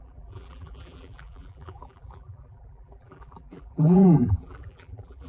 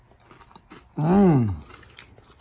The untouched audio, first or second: second